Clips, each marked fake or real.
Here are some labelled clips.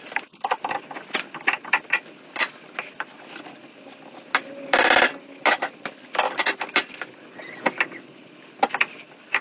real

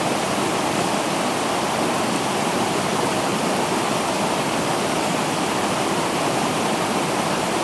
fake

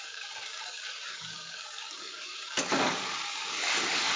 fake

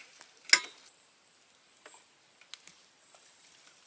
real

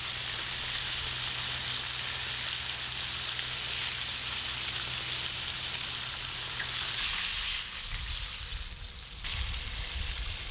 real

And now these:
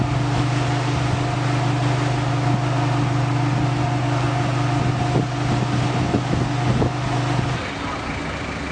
real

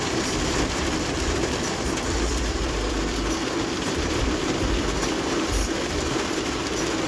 fake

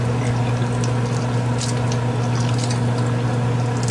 real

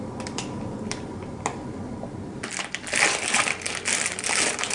fake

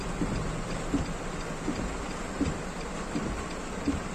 real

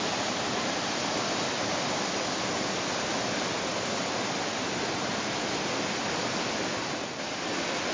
real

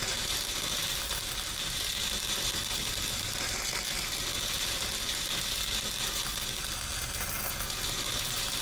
real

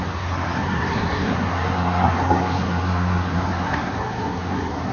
fake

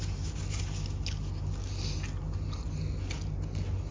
real